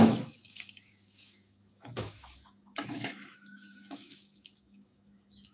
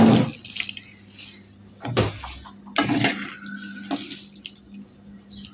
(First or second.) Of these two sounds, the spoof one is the first